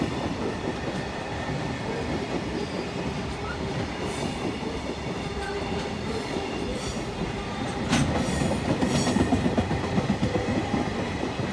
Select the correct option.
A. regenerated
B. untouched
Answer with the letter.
A